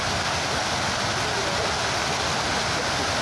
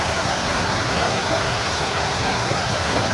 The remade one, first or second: second